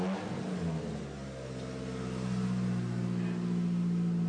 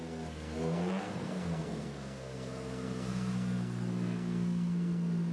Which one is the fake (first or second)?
second